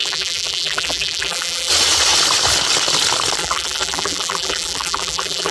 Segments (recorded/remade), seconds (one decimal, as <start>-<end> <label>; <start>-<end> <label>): 0.0-1.7 remade; 1.7-3.4 recorded; 3.4-5.5 remade